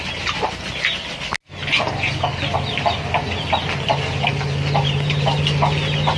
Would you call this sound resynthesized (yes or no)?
no